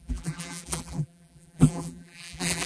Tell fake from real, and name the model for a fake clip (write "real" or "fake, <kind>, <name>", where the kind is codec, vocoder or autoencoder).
fake, vocoder, BigVGAN v2